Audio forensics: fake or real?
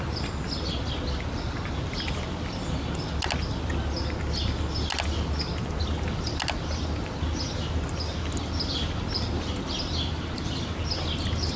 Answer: real